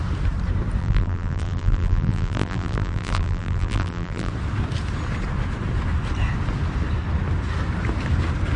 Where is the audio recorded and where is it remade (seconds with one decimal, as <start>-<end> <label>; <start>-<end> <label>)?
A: 0.0-0.8 recorded; 0.8-4.3 remade; 4.3-8.6 recorded